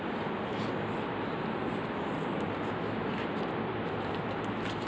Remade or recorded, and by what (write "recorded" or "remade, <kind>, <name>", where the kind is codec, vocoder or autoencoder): recorded